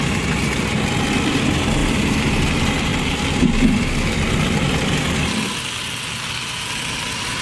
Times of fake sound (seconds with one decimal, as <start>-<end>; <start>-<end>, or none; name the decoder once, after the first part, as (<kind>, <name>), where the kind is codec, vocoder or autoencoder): 1.8-2.3 (vocoder, BigVGAN v2)